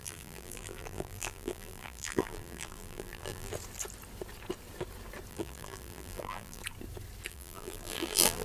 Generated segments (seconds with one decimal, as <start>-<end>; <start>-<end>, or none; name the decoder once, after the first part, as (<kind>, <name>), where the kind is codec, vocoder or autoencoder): 0.0-3.5 (vocoder, BigVGAN v2); 5.3-6.6; 7.3-8.4